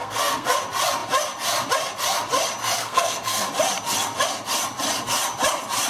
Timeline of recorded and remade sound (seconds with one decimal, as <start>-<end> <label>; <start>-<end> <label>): 0.0-0.6 remade; 0.6-2.6 recorded; 2.6-3.5 remade; 3.5-5.9 recorded